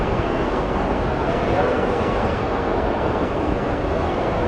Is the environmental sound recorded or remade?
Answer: remade